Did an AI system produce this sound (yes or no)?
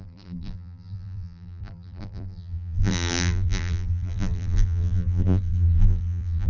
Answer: yes